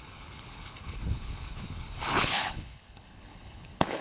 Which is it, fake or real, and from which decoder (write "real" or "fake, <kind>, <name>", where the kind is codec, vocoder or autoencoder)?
fake, codec, HILCodec